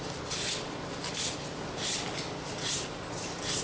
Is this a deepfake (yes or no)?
no